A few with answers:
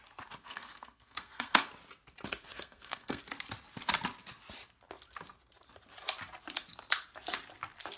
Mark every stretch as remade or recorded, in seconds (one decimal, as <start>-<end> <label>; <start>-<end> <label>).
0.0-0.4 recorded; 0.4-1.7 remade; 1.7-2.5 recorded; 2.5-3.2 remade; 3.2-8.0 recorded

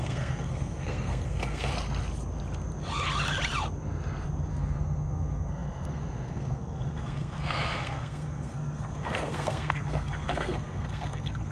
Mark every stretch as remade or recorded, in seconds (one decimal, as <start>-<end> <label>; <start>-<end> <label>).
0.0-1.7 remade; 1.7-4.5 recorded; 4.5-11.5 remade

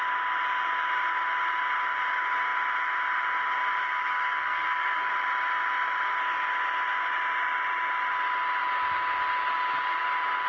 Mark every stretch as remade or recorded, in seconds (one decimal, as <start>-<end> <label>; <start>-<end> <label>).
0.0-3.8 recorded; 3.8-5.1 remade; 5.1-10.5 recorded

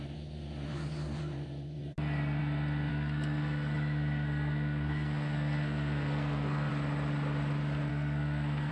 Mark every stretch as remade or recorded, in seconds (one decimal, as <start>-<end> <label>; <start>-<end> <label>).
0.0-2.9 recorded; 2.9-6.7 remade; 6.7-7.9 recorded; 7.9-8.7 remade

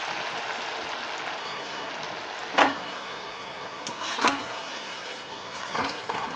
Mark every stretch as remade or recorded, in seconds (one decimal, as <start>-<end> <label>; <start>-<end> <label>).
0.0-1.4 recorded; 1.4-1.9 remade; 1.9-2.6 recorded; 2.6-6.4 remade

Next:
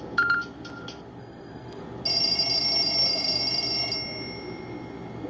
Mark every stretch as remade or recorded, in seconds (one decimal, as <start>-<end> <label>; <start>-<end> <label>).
0.0-1.2 recorded; 1.2-1.8 remade; 1.8-5.3 recorded

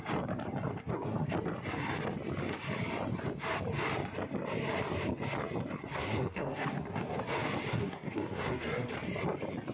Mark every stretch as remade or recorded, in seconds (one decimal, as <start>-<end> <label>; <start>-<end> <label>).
0.0-0.7 recorded; 0.7-1.3 remade; 1.3-5.9 recorded; 5.9-7.2 remade; 7.2-7.7 recorded; 7.7-8.9 remade; 8.9-9.7 recorded